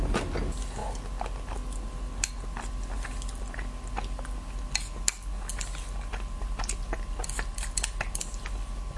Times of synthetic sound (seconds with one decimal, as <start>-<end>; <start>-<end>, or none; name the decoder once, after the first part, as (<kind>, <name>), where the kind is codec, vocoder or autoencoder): none